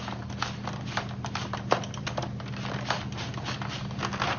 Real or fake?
real